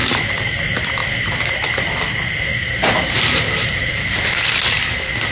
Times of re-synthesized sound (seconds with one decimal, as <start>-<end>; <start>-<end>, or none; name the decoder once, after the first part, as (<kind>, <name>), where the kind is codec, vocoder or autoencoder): 0.0-0.6 (vocoder, BigVGAN v2); 2.5-4.3